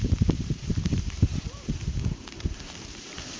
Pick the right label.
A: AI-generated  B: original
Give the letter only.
A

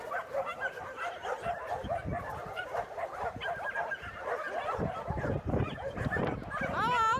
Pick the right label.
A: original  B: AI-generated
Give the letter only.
A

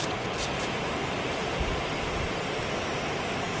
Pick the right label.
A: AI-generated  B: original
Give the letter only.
B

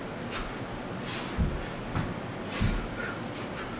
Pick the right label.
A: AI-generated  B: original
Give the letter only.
B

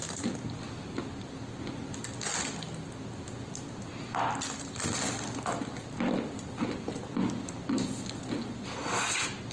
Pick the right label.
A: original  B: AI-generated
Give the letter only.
A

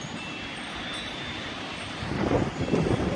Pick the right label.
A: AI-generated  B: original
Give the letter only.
A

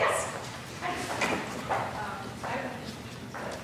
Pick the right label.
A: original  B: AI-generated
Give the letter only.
B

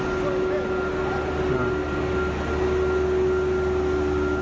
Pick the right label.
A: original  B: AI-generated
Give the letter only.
A